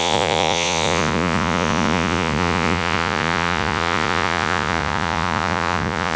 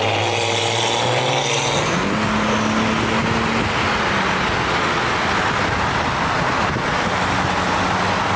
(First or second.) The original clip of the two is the second